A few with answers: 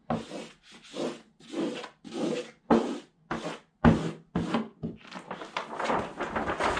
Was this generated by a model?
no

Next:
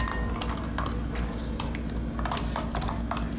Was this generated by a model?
no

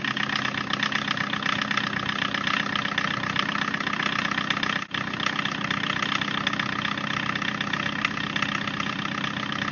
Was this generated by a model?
no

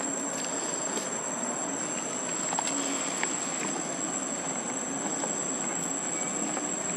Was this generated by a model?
no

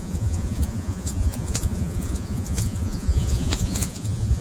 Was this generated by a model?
yes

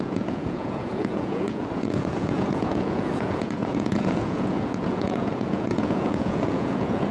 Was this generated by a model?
yes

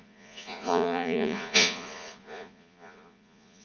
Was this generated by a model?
yes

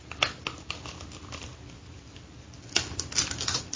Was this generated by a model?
no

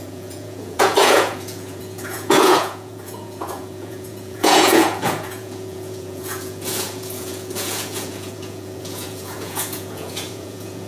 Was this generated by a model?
yes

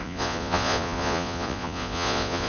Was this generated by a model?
yes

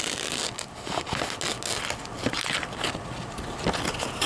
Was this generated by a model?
no